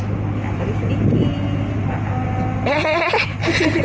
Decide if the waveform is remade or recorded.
recorded